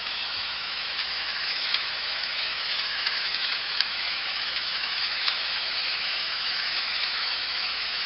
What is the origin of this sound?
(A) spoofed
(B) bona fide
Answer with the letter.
A